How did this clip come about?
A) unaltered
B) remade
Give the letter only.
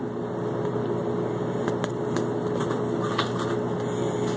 A